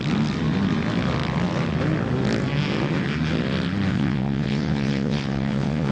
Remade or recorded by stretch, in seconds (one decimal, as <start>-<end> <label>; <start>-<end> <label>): 0.0-3.9 recorded; 3.9-5.9 remade